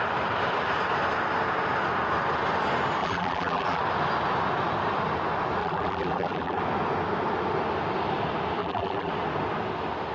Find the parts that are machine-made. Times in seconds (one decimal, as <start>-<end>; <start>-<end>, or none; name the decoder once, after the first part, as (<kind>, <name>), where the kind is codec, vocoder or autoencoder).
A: 3.0-3.8 (vocoder, BigVGAN v2); 5.6-6.6; 8.6-9.1